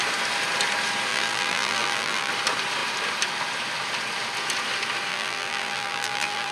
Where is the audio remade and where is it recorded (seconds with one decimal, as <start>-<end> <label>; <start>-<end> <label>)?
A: 0.0-1.1 recorded; 1.1-2.3 remade; 2.3-5.1 recorded; 5.1-6.5 remade